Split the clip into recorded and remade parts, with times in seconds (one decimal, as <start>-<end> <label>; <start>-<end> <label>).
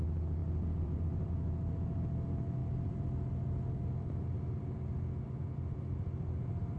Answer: 0.0-0.4 recorded; 0.4-1.3 remade; 1.3-2.6 recorded; 2.6-6.8 remade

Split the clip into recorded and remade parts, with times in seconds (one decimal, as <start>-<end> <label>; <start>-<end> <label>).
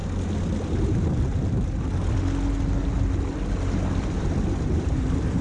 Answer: 0.0-0.7 recorded; 0.7-1.3 remade; 1.3-4.5 recorded; 4.5-5.4 remade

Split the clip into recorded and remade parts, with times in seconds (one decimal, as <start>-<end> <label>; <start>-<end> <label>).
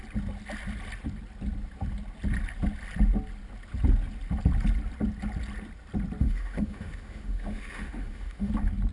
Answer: 0.0-6.2 recorded; 6.2-8.5 remade; 8.5-8.9 recorded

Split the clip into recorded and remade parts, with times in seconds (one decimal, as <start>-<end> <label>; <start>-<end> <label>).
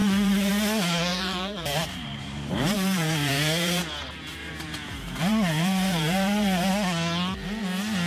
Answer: 0.0-0.5 remade; 0.5-1.1 recorded; 1.1-3.8 remade; 3.8-4.3 recorded; 4.3-6.7 remade; 6.7-8.1 recorded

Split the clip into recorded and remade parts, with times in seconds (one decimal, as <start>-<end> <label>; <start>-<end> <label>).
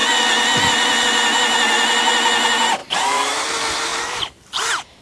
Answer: 0.0-2.8 recorded; 2.8-3.3 remade; 3.3-3.9 recorded; 3.9-5.0 remade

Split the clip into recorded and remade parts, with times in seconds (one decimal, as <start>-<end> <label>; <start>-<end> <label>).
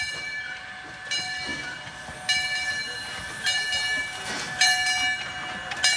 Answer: 0.0-6.0 recorded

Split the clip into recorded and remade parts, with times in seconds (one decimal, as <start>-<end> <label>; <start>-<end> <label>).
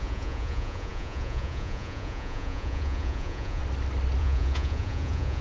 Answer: 0.0-3.6 remade; 3.6-4.2 recorded; 4.2-5.4 remade